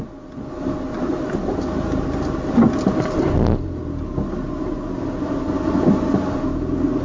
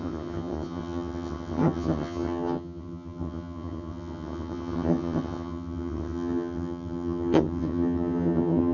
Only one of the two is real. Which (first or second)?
first